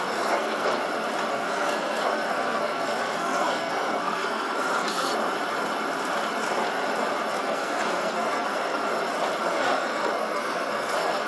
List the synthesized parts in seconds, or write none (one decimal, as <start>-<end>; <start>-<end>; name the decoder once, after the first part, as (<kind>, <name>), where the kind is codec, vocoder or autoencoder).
0.0-0.8 (codec, SNAC); 1.3-5.1; 7.4-8.9; 9.4-11.3